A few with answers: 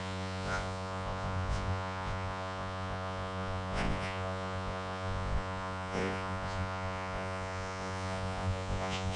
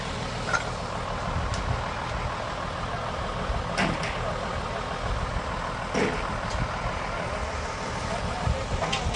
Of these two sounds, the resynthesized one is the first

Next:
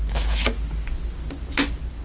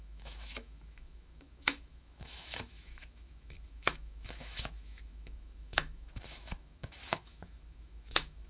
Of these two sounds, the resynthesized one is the second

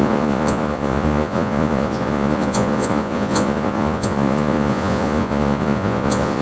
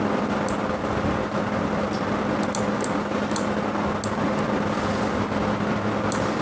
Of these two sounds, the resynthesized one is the first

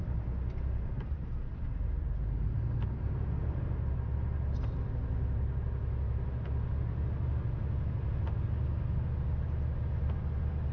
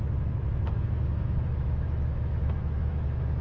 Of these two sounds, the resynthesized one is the second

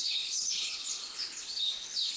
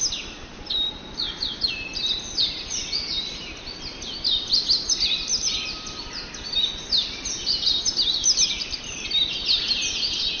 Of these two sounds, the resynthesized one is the first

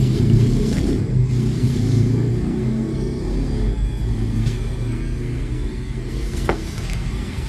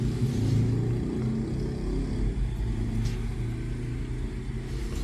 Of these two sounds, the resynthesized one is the first